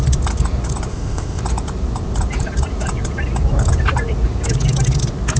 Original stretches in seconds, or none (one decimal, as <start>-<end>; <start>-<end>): 0.0-0.9; 1.4-5.4